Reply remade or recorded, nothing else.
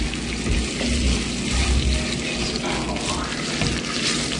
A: recorded